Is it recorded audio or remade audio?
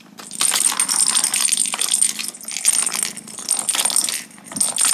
recorded